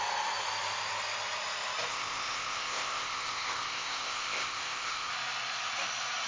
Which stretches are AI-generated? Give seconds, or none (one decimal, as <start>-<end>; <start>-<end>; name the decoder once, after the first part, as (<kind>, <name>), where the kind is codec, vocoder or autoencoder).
1.9-5.1 (codec, ZipCodec)